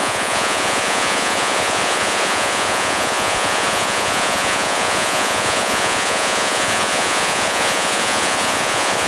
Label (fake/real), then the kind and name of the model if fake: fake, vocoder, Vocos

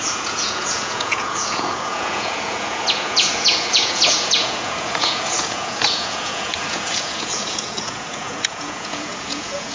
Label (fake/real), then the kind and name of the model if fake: fake, vocoder, Vocos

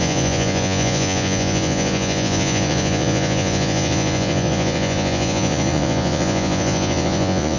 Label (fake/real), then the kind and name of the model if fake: fake, vocoder, Vocos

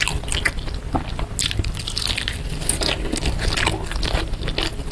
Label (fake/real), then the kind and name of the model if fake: real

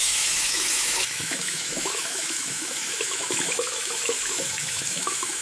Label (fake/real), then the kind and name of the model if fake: fake, autoencoder, DAC-VAE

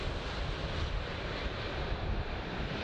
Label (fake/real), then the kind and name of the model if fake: fake, vocoder, BigVGAN v2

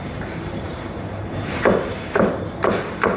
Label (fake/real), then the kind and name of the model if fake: fake, vocoder, BigVGAN v2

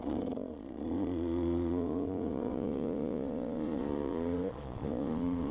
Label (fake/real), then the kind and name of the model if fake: fake, vocoder, Vocos